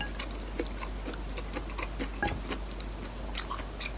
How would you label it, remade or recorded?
recorded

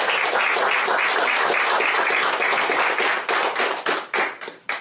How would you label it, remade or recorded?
recorded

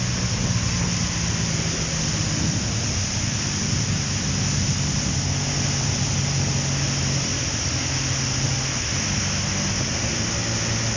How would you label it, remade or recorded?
recorded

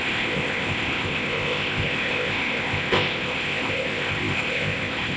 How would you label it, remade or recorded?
remade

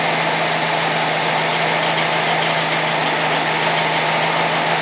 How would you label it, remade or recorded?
recorded